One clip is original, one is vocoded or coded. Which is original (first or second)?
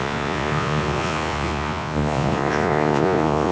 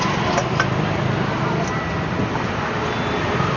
second